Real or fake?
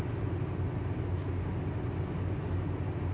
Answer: real